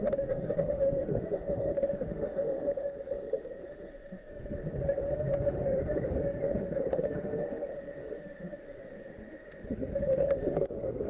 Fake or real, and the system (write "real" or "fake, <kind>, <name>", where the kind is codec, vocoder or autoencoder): fake, autoencoder, DAC-VAE